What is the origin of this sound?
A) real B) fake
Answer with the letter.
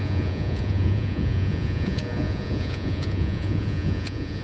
B